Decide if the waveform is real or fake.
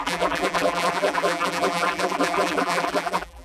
fake